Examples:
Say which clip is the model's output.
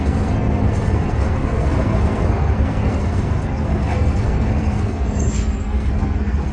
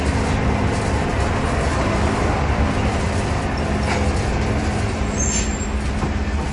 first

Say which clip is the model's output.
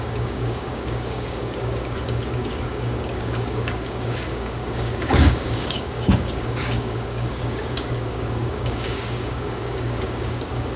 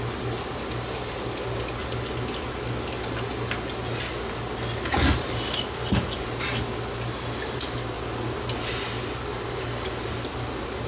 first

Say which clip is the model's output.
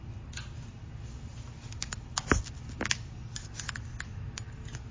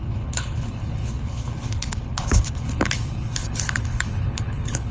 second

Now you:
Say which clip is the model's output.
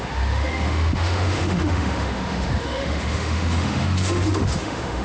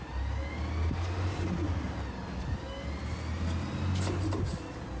first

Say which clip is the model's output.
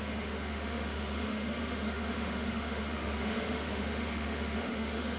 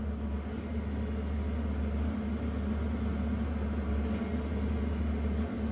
first